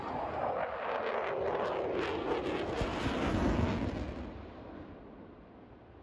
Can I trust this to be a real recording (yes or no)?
yes